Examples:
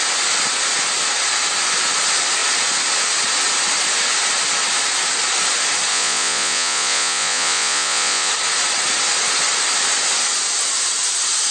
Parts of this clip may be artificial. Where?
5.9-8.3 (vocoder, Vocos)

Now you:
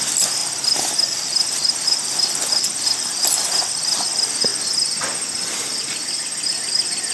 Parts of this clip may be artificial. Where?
none

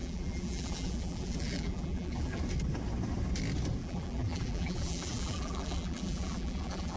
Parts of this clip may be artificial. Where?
0.0-2.4 (vocoder, BigVGAN v2); 3.8-7.0

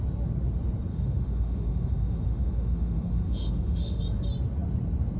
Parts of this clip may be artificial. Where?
0.9-4.0 (autoencoder, DAC-VAE)

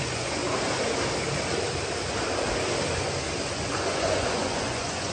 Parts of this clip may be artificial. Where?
0.0-0.4 (vocoder, Vocos); 3.5-5.1